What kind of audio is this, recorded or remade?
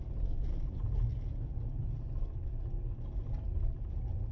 recorded